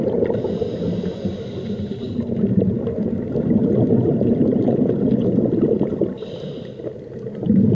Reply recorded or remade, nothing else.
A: recorded